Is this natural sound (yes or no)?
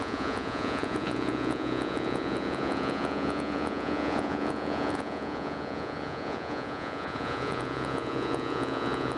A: no